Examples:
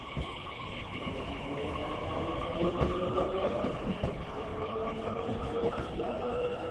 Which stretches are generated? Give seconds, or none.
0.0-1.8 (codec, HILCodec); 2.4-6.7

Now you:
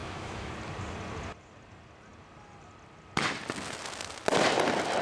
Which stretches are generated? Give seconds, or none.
0.0-0.5 (autoencoder, DAC-VAE)

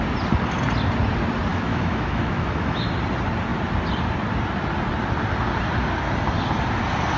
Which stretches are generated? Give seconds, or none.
1.5-2.9 (autoencoder, DAC-VAE)

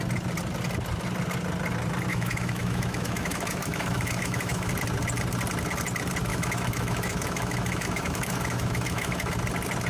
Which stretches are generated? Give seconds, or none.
2.1-4.7 (autoencoder, DAC-VAE); 6.3-9.3

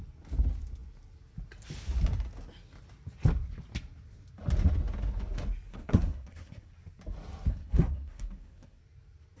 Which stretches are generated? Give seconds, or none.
5.7-6.7 (codec, SNAC); 7.5-8.8

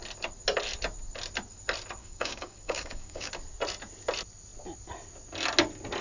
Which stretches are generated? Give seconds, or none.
2.0-3.3 (codec, DAC)

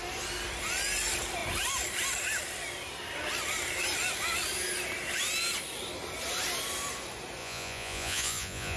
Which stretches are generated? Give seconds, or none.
7.4-8.8 (vocoder, Vocos)